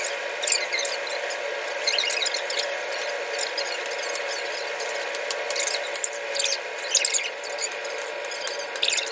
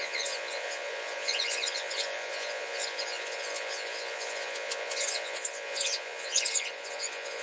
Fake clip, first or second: second